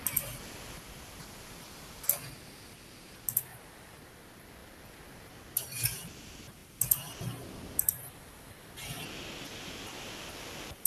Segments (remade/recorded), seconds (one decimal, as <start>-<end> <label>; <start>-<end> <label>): 0.0-10.9 recorded